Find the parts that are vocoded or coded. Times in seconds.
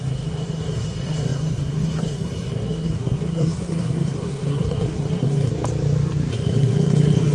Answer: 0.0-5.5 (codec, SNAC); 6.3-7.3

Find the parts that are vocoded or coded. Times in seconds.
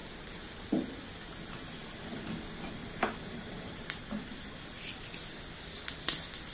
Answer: 2.8-4.0 (vocoder, BigVGAN v2)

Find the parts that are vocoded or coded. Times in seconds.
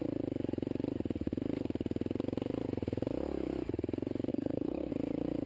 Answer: 4.3-4.9 (codec, SNAC)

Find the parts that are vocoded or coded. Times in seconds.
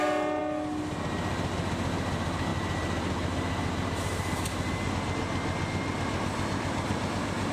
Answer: 2.5-4.9 (vocoder, BigVGAN v2)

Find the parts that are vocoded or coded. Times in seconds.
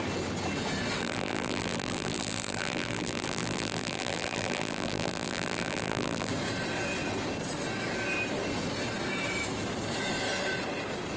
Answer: 1.0-6.3 (vocoder, BigVGAN v2)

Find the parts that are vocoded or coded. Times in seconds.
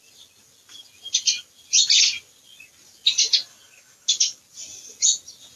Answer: 3.5-4.4 (codec, DAC)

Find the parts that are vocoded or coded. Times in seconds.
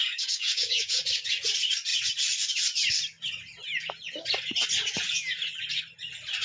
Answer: 0.0-1.0 (codec, DAC)